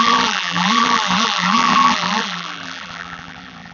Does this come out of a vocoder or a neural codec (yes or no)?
yes